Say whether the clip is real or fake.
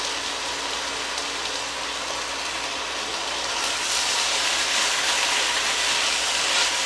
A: real